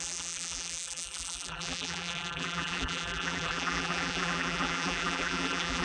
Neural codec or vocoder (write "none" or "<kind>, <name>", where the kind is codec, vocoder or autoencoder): vocoder, BigVGAN v2